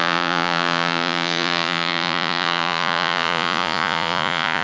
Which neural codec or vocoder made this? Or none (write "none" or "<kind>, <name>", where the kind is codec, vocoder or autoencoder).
vocoder, Vocos